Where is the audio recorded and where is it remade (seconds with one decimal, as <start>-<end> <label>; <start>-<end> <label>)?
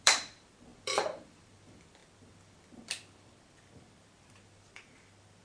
0.0-5.4 remade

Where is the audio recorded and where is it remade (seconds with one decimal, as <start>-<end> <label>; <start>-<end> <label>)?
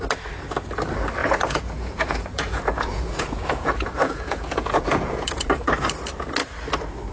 0.0-1.2 recorded; 1.2-5.5 remade; 5.5-7.1 recorded